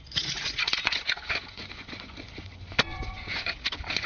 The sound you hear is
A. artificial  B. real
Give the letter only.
A